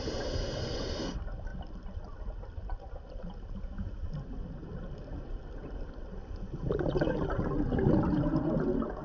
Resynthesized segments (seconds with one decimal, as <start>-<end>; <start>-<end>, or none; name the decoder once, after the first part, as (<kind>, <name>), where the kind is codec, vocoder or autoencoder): none